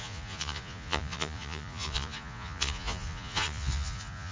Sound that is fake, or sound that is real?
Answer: fake